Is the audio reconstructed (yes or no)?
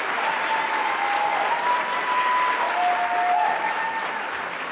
no